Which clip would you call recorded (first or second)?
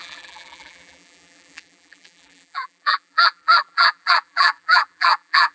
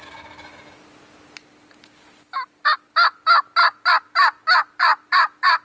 second